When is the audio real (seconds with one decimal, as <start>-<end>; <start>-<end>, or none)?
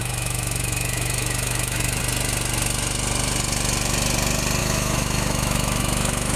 2.0-4.6